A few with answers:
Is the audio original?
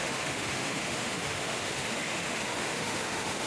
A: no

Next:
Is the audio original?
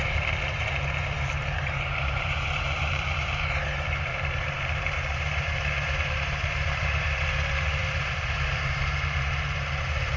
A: no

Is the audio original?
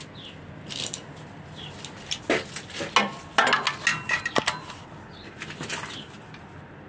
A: yes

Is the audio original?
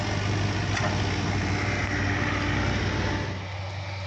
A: yes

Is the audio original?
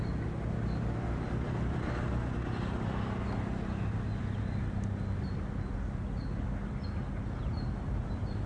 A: yes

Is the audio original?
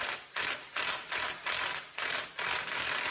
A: yes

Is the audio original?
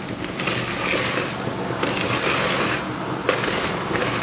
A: yes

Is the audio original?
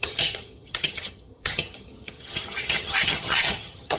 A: no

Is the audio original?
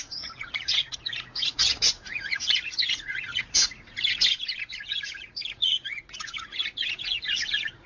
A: no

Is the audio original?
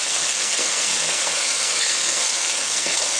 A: no